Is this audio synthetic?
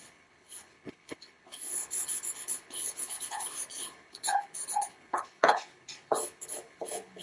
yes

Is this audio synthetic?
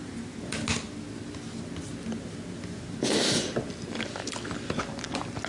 no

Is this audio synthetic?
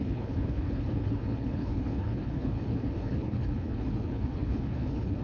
yes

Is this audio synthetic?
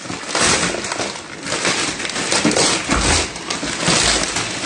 no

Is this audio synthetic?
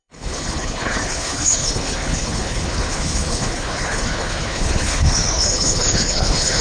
yes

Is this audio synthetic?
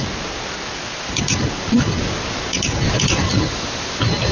no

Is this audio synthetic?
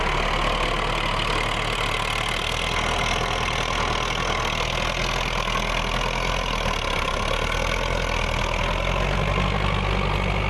no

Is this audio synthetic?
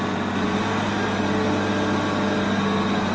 no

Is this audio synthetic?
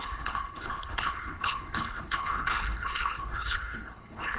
yes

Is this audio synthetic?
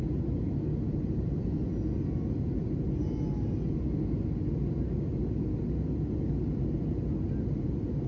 no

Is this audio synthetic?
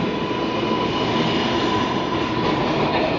no